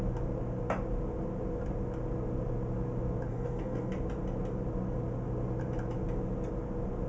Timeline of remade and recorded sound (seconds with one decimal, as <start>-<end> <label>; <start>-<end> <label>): 0.0-3.3 recorded; 3.3-3.9 remade; 3.9-7.1 recorded